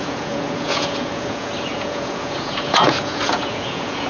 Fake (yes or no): yes